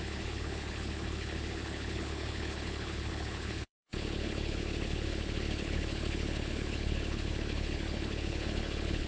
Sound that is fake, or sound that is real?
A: fake